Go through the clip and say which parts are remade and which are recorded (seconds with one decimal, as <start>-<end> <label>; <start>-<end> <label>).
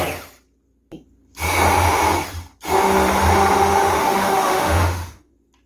0.0-4.0 recorded; 4.0-5.3 remade; 5.3-5.7 recorded